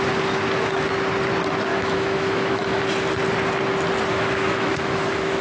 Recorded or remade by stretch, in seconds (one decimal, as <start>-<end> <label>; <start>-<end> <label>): 0.0-1.7 recorded; 1.7-2.8 remade; 2.8-4.1 recorded; 4.1-5.4 remade